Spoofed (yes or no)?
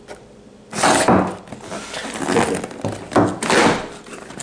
no